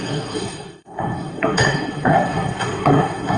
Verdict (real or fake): fake